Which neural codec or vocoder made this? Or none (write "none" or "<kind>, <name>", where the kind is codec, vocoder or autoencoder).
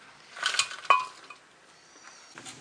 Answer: none